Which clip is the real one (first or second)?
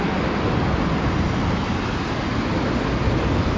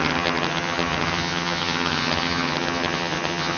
first